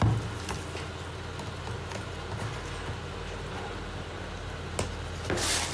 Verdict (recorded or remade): recorded